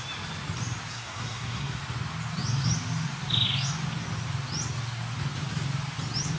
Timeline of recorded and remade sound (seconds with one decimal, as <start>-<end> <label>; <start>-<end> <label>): 0.0-0.9 recorded; 0.9-1.8 remade; 1.8-6.4 recorded